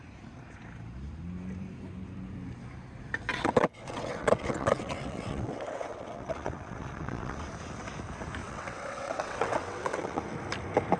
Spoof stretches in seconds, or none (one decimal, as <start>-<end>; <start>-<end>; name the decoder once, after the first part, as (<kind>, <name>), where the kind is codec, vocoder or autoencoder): 3.3-7.5 (vocoder, WaveNeXt); 8.4-10.2